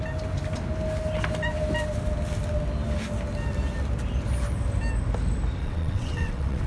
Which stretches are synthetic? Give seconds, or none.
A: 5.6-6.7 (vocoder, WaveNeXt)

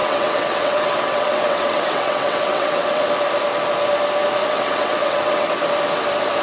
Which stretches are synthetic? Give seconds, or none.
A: 0.0-3.1 (vocoder, WaveNeXt); 4.4-5.5

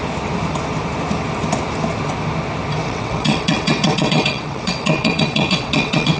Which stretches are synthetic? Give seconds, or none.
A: 2.8-6.2 (vocoder, WaveNeXt)